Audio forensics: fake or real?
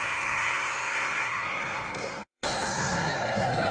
fake